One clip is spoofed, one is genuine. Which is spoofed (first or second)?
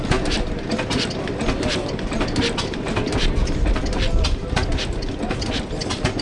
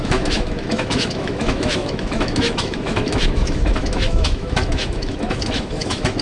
second